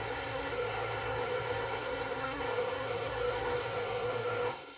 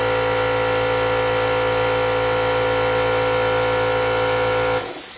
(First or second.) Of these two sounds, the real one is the second